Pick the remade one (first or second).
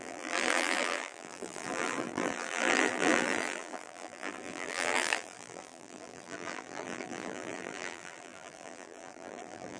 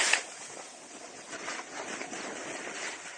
first